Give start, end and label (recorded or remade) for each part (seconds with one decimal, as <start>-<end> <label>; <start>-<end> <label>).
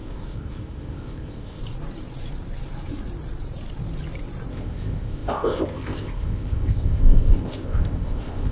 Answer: 0.0-1.6 remade; 1.6-4.5 recorded; 4.5-8.5 remade